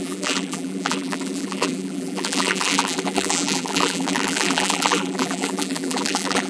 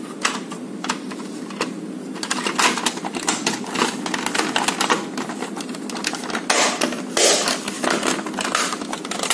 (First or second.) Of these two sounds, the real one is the second